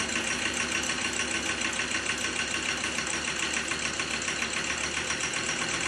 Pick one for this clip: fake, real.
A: real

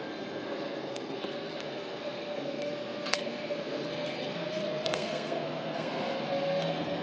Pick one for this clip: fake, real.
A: fake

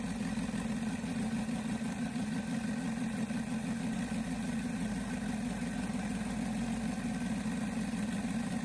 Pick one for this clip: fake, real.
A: real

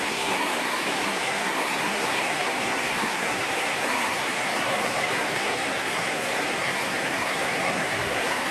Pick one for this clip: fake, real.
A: fake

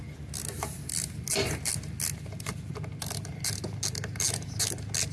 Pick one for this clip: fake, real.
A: real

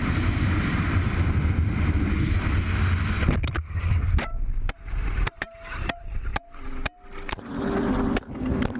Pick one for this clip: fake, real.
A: real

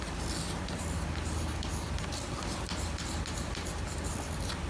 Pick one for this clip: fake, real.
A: real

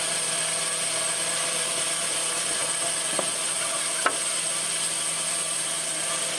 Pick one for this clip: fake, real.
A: real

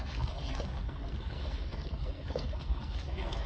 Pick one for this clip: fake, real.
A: fake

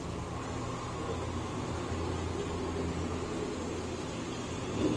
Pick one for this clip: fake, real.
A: real